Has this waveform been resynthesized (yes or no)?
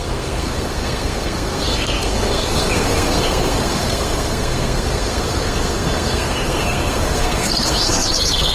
yes